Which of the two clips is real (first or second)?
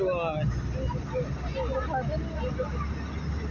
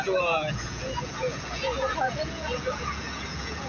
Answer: first